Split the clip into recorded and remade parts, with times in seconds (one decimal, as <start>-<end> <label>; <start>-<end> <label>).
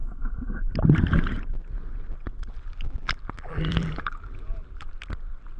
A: 0.0-2.4 recorded; 2.4-4.9 remade; 4.9-5.6 recorded